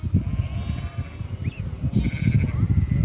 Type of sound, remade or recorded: recorded